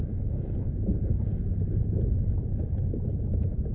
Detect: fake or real fake